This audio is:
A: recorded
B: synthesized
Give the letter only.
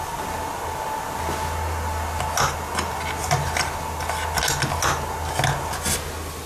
A